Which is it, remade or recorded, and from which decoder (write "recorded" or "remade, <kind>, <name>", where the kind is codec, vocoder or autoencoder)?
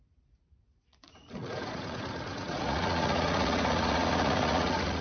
remade, vocoder, Vocos